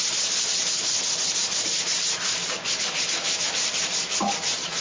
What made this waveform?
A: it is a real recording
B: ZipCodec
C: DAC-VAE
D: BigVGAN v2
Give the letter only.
D